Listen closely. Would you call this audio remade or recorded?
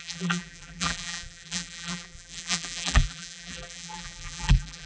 remade